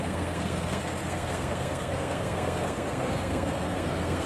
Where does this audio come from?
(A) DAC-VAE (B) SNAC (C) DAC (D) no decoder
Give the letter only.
B